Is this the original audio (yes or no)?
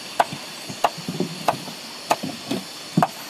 yes